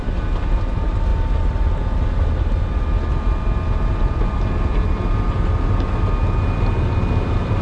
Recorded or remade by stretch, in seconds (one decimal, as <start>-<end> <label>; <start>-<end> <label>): 0.0-7.6 recorded